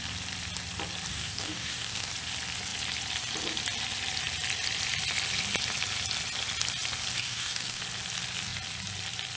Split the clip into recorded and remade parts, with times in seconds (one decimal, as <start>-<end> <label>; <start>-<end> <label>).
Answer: 0.0-1.1 recorded; 1.1-2.1 remade; 2.1-7.1 recorded; 7.1-7.8 remade; 7.8-9.4 recorded